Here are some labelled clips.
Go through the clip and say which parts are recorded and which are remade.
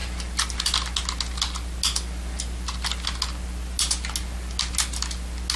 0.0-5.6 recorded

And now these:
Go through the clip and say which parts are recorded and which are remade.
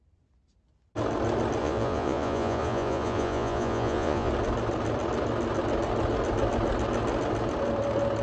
0.0-1.6 recorded; 1.6-4.3 remade; 4.3-8.2 recorded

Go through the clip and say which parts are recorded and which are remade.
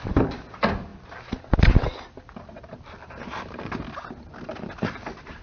0.0-5.4 recorded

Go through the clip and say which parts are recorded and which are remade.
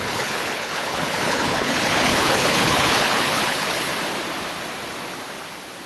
0.0-3.9 remade; 3.9-5.9 recorded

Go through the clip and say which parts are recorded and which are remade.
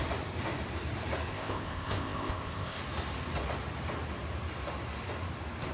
0.0-1.3 recorded; 1.3-2.8 remade; 2.8-5.7 recorded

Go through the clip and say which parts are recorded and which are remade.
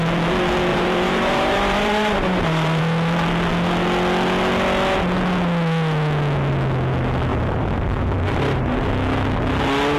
0.0-0.7 recorded; 0.7-2.8 remade; 2.8-7.3 recorded; 7.3-8.9 remade; 8.9-10.0 recorded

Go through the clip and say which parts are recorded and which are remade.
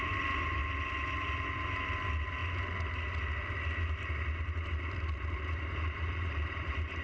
0.0-0.6 remade; 0.6-1.6 recorded; 1.6-2.4 remade; 2.4-3.8 recorded; 3.8-7.0 remade